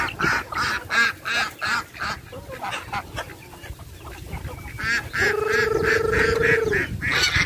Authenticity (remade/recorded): recorded